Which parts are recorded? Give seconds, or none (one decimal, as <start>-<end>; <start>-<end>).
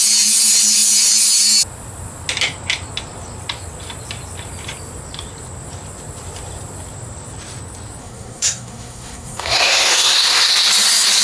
0.0-8.0; 10.5-11.2